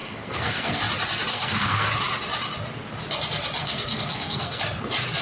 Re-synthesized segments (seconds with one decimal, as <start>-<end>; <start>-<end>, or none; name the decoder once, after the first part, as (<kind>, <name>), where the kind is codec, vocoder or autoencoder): 0.0-0.8 (codec, SNAC); 1.3-1.9; 3.6-4.6